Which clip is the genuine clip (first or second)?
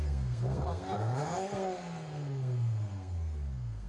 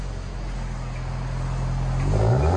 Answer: second